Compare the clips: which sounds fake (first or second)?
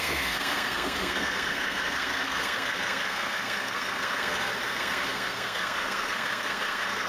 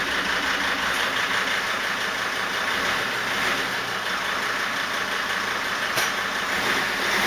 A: first